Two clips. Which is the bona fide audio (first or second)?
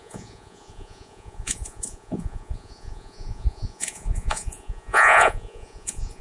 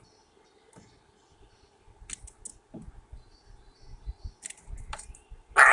second